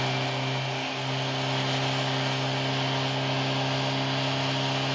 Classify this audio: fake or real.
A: real